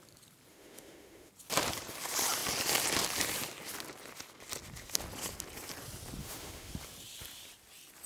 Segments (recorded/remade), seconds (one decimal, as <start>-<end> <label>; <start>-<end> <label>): 0.0-0.5 recorded; 0.5-1.3 remade; 1.3-6.2 recorded; 6.2-6.7 remade; 6.7-8.1 recorded